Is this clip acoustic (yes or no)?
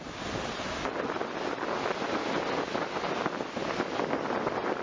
yes